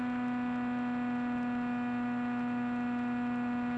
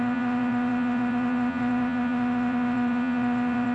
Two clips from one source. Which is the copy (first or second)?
second